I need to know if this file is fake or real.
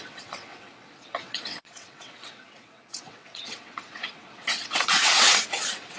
fake